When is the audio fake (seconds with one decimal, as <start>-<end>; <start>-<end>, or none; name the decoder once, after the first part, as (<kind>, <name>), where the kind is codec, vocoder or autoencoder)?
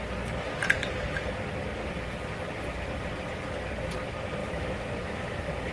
4.4-5.7 (autoencoder, DAC-VAE)